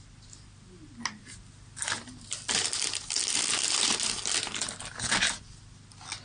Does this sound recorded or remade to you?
recorded